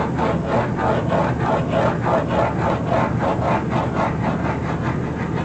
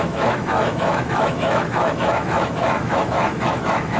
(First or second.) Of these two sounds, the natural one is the first